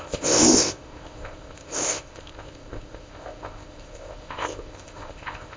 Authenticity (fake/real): fake